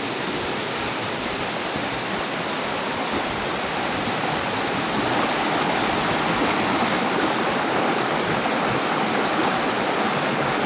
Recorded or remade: recorded